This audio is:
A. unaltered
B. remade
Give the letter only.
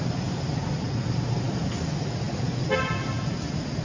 A